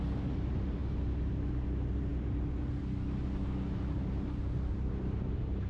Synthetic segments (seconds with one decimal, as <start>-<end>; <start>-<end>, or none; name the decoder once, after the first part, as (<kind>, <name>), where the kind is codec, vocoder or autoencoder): none